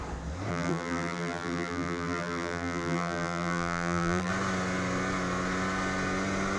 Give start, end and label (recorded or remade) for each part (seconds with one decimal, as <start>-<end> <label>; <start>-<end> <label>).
0.0-0.5 recorded; 0.5-4.3 remade; 4.3-6.6 recorded